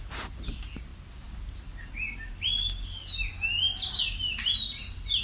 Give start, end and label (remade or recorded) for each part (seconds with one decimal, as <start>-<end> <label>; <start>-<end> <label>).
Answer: 0.0-5.2 recorded